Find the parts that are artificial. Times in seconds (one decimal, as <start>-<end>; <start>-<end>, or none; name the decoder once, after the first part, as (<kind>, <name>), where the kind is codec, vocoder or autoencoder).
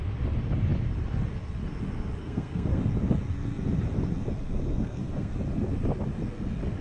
2.2-2.8 (codec, SNAC); 4.7-5.3